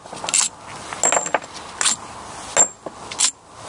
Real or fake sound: real